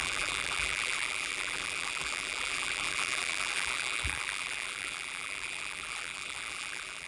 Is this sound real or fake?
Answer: fake